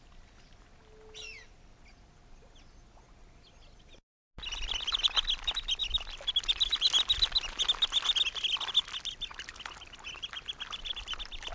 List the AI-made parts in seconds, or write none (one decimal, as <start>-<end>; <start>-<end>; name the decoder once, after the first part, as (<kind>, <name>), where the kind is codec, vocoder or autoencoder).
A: none